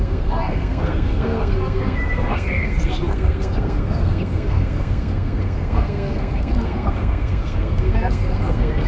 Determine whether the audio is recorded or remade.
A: remade